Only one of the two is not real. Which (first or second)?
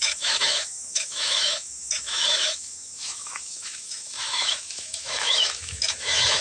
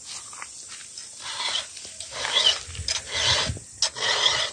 first